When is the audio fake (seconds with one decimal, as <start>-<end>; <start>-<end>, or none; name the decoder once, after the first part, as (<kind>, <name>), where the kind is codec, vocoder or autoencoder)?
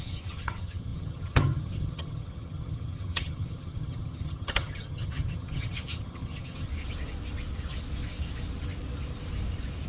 0.0-6.7 (vocoder, HiFi-GAN)